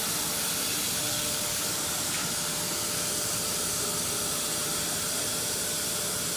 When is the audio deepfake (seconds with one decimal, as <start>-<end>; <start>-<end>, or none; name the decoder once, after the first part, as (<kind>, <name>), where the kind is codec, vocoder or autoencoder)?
1.1-2.3 (codec, DAC)